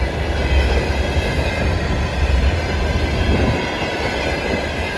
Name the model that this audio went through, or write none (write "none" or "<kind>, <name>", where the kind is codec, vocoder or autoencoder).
none